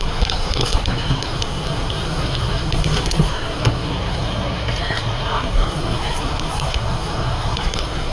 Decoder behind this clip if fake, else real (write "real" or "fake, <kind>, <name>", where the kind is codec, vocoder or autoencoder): fake, codec, SNAC